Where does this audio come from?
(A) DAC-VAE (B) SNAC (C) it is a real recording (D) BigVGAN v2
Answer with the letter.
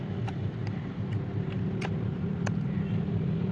D